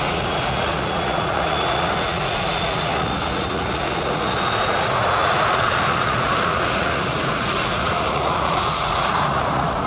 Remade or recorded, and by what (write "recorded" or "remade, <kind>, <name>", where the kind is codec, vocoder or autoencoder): remade, vocoder, Vocos